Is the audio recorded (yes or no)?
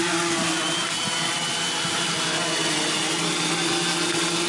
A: yes